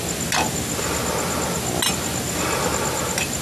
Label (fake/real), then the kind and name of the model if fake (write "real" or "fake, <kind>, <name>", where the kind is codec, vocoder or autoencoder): real